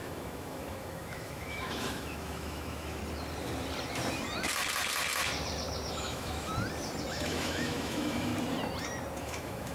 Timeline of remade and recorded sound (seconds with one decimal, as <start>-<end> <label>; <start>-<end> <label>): 0.0-3.0 remade; 3.0-5.9 recorded; 5.9-6.5 remade; 6.5-7.1 recorded; 7.1-8.3 remade; 8.3-9.2 recorded; 9.2-9.7 remade